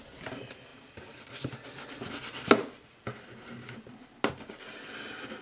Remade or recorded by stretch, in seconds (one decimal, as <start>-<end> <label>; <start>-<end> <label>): 0.0-5.4 recorded